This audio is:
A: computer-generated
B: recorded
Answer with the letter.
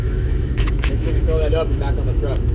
A